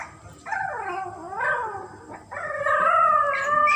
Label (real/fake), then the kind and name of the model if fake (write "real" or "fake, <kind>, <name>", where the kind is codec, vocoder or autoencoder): real